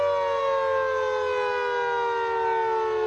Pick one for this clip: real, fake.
real